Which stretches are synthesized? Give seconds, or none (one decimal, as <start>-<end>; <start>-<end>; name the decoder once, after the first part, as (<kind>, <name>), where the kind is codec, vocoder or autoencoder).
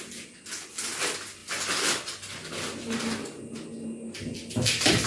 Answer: none